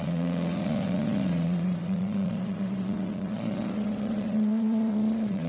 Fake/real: fake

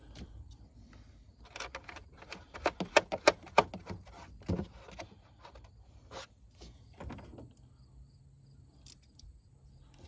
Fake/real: real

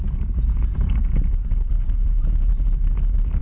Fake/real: real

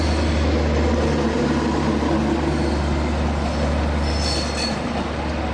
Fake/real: real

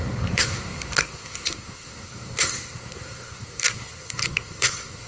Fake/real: fake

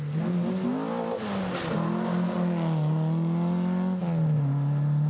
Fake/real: real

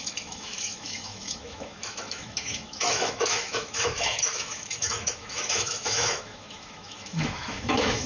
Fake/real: fake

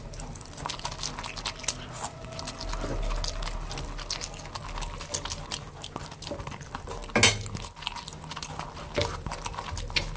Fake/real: real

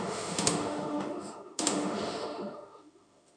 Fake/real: fake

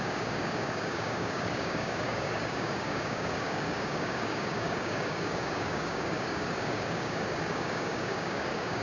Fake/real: fake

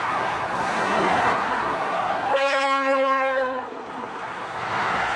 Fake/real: fake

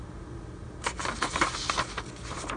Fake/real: real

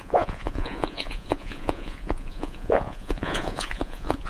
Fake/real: fake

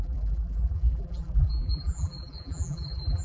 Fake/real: fake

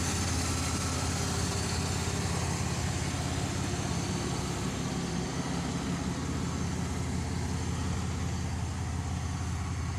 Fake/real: real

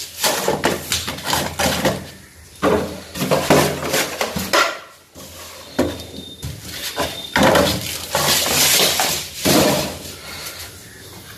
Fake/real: real